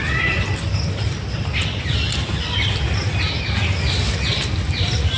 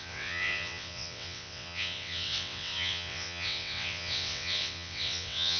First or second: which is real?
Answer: first